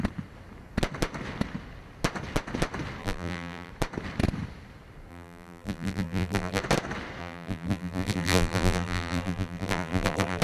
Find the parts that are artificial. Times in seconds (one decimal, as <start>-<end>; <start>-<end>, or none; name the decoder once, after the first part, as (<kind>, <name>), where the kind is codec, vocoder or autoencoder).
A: 3.0-3.7 (vocoder, BigVGAN v2); 5.1-6.6; 7.2-10.4